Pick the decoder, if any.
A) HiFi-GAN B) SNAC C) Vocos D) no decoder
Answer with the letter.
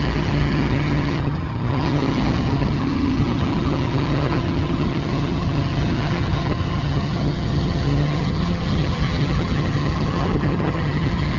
A